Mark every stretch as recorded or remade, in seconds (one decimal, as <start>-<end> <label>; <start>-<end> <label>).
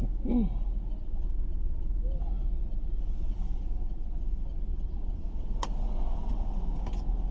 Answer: 0.0-1.0 recorded; 1.0-1.9 remade; 1.9-2.5 recorded; 2.5-6.7 remade; 6.7-7.3 recorded